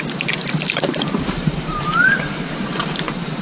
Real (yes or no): no